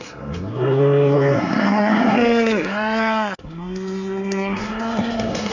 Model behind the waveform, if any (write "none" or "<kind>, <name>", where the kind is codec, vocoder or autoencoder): codec, SNAC